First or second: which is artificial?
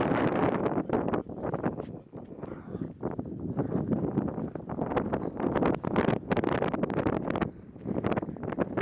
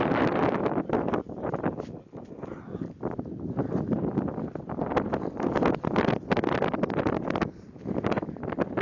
first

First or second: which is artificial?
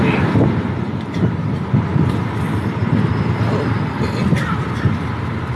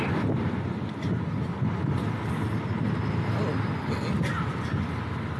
first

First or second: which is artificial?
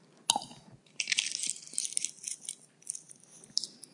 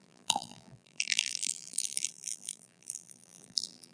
second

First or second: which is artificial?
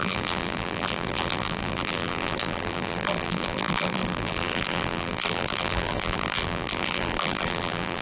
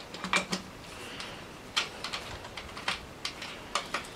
first